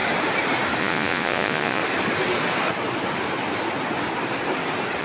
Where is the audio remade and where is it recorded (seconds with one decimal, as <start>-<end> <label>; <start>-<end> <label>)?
0.0-0.8 recorded; 0.8-1.8 remade; 1.8-5.0 recorded